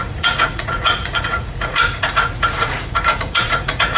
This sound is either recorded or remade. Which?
remade